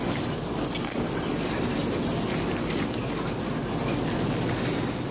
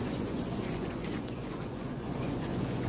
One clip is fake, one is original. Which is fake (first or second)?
second